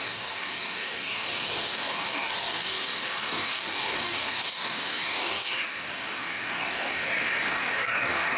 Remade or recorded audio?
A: remade